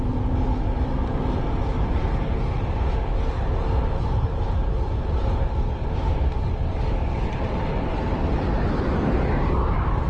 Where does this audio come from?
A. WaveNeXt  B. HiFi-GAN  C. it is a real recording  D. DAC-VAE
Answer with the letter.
C